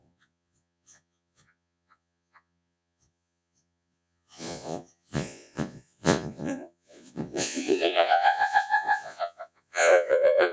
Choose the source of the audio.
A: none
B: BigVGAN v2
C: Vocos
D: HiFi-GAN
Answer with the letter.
C